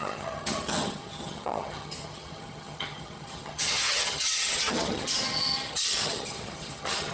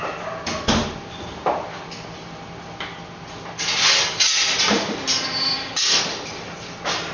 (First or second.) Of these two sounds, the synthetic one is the first